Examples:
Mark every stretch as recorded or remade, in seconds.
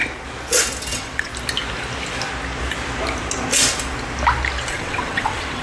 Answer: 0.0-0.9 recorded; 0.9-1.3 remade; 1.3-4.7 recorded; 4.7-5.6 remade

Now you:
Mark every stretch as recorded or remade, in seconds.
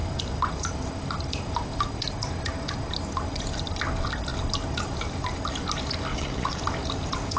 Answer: 0.0-6.1 recorded; 6.1-6.6 remade; 6.6-7.4 recorded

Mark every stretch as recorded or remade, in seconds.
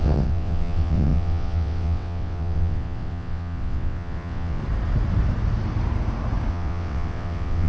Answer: 0.0-4.6 remade; 4.6-6.5 recorded; 6.5-7.7 remade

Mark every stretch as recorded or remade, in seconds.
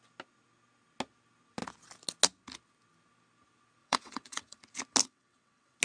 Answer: 0.0-3.8 recorded; 3.8-4.6 remade; 4.6-5.0 recorded; 5.0-5.8 remade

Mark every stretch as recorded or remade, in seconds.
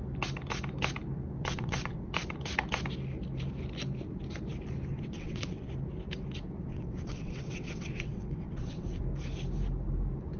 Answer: 0.0-1.4 recorded; 1.4-2.1 remade; 2.1-4.9 recorded; 4.9-5.7 remade; 5.7-6.7 recorded; 6.7-9.0 remade; 9.0-10.4 recorded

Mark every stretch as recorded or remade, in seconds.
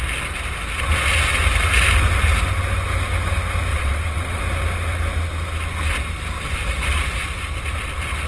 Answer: 0.0-3.7 recorded; 3.7-4.4 remade; 4.4-8.3 recorded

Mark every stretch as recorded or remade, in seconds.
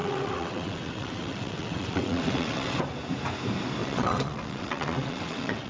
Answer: 0.0-2.8 remade; 2.8-3.8 recorded; 3.8-5.7 remade